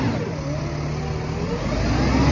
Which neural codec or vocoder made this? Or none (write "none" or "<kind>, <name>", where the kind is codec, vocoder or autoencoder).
none